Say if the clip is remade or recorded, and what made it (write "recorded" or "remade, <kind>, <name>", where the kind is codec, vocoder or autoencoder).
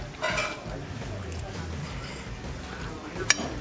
recorded